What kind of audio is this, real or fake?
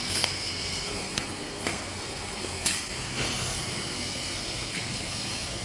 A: fake